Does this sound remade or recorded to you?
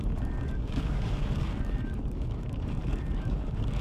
remade